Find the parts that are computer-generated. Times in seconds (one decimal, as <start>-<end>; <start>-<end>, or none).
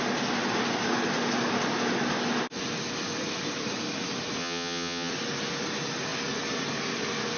4.4-5.1